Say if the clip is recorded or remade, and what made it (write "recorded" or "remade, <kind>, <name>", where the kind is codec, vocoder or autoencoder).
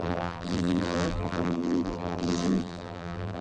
remade, vocoder, BigVGAN v2